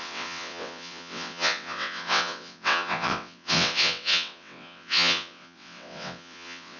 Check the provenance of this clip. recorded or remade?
remade